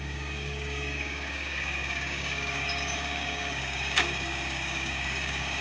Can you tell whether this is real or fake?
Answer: fake